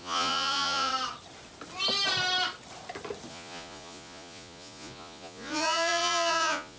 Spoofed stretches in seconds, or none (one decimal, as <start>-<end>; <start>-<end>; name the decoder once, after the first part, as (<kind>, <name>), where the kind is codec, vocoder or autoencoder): 0.0-0.9 (vocoder, Vocos); 3.3-6.8